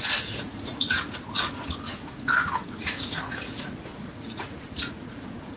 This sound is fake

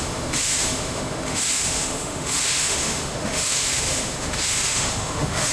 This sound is fake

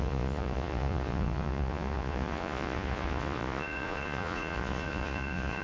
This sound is fake